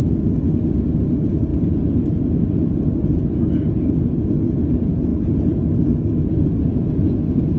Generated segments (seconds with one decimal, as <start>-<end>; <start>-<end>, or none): none